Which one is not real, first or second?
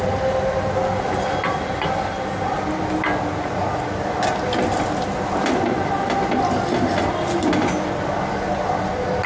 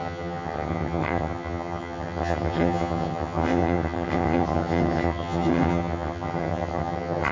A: second